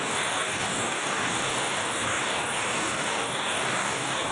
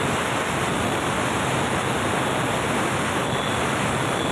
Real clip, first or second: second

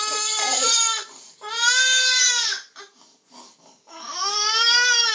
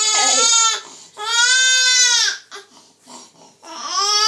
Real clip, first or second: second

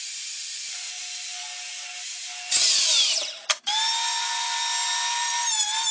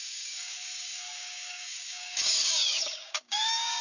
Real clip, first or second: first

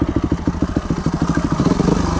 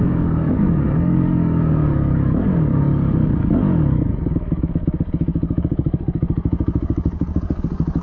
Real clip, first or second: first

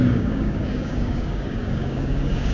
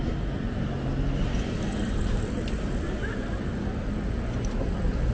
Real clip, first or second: second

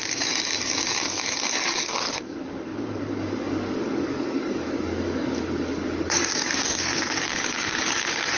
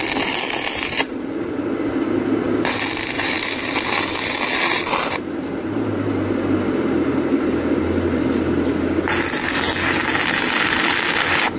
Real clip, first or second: second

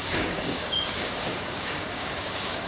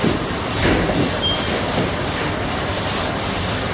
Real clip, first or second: second